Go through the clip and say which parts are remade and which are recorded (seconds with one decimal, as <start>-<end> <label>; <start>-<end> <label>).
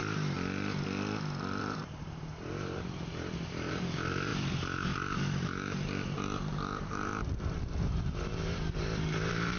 0.0-1.6 recorded; 1.6-9.6 remade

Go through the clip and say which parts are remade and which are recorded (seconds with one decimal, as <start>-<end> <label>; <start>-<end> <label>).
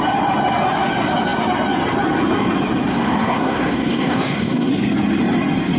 0.0-2.9 recorded; 2.9-4.7 remade; 4.7-5.8 recorded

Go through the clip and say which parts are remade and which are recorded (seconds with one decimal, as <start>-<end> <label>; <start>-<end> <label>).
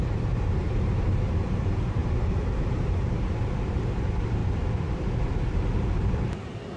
0.0-4.4 remade; 4.4-5.2 recorded; 5.2-6.8 remade